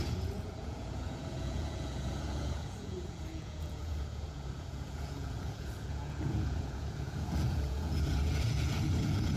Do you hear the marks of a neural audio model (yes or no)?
yes